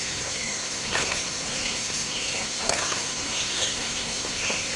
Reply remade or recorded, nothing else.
remade